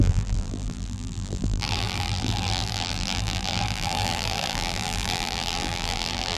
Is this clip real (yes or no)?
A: no